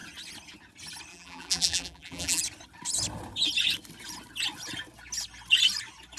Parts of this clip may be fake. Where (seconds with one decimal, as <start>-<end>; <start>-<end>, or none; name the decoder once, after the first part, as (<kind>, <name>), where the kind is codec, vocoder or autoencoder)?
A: 1.1-2.4 (vocoder, BigVGAN v2)